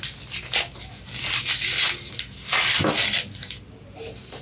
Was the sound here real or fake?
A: real